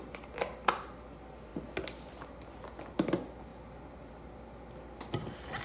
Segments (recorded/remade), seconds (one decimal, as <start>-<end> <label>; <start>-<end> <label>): 0.0-5.6 recorded